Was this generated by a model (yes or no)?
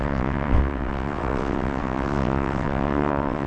yes